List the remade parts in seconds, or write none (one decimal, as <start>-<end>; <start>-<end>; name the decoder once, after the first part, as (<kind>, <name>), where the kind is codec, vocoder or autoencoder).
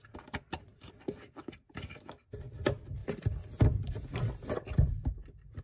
none